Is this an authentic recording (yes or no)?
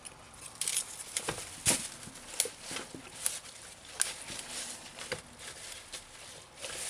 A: yes